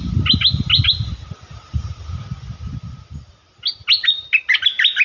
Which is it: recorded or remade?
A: recorded